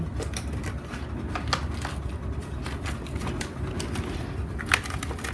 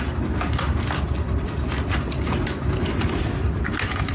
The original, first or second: first